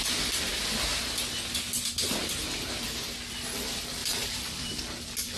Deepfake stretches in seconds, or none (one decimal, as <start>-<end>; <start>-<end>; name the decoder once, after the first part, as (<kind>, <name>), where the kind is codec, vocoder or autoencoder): 4.0-4.8 (vocoder, BigVGAN v2)